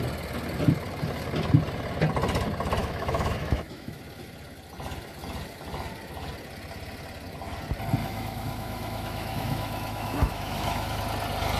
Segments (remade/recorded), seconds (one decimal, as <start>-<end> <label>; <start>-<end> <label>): 0.0-2.8 recorded; 2.8-4.0 remade; 4.0-8.0 recorded; 8.0-11.0 remade; 11.0-11.6 recorded